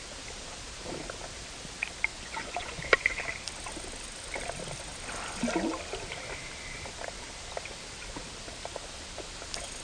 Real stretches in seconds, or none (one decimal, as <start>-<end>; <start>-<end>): 0.0-2.1; 3.2-9.8